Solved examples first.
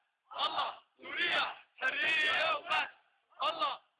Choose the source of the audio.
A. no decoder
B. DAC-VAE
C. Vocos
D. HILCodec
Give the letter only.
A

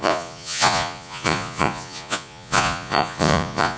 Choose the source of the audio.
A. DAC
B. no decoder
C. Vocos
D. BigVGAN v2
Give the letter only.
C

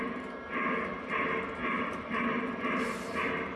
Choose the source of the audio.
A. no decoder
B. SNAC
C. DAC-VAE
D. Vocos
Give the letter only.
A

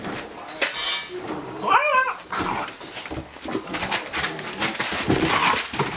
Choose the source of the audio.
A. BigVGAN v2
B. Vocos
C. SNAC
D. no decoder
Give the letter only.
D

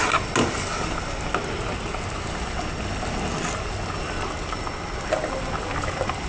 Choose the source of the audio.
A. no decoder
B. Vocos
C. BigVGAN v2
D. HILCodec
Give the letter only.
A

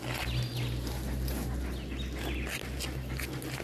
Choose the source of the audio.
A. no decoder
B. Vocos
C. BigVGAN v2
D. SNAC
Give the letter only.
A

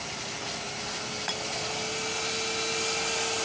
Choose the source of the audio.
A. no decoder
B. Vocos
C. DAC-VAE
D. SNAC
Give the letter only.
A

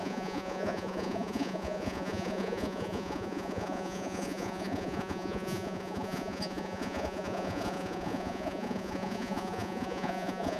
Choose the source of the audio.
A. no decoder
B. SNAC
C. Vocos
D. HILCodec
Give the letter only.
C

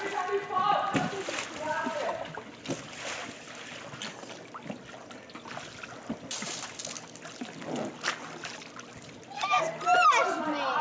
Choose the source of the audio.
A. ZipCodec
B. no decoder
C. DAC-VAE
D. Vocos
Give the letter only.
B